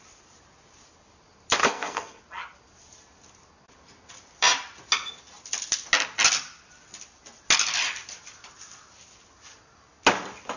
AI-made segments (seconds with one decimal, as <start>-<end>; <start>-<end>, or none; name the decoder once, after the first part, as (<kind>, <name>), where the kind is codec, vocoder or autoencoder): 1.6-2.2 (codec, SNAC)